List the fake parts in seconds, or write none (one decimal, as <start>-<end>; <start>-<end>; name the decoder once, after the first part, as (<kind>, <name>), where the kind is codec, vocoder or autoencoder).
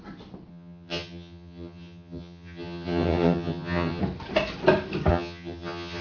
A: 0.5-4.0 (vocoder, HiFi-GAN); 5.1-6.0